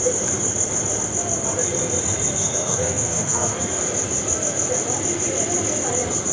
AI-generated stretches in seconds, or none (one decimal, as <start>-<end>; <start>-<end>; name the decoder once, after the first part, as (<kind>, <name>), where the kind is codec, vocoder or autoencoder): 2.4-3.8 (codec, SNAC)